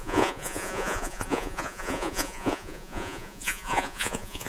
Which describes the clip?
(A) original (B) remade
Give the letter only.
B